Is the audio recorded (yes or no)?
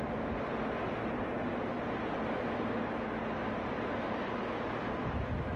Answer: yes